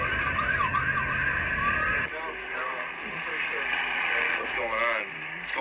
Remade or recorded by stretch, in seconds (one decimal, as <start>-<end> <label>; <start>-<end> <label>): 0.0-5.6 recorded

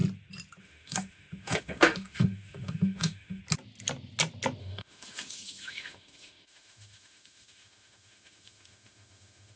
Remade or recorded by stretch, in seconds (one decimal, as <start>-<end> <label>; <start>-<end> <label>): 0.0-0.6 recorded; 0.6-3.4 remade; 3.4-4.6 recorded; 4.6-9.6 remade

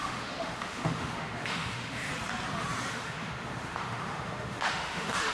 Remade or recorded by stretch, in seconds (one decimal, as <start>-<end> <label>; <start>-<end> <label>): 0.0-2.1 remade; 2.1-2.9 recorded; 2.9-5.3 remade

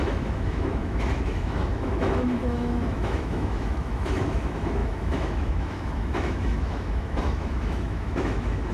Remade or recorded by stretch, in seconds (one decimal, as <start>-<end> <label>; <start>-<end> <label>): 0.0-8.7 remade

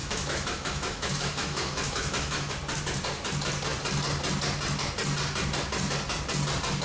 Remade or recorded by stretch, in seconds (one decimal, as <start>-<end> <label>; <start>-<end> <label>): 0.0-2.5 remade; 2.5-6.8 recorded

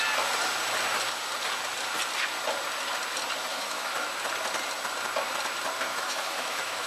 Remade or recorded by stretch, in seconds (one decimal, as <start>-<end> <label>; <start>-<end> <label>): 0.0-3.5 recorded; 3.5-4.1 remade; 4.1-5.9 recorded; 5.9-6.9 remade

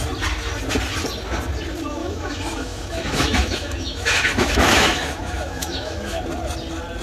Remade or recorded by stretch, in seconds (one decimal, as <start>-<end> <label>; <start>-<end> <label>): 0.0-2.0 recorded; 2.0-6.2 remade; 6.2-7.0 recorded